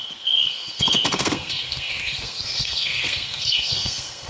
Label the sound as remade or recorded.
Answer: remade